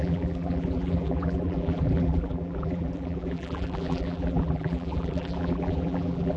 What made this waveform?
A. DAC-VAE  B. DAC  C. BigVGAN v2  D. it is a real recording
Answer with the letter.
C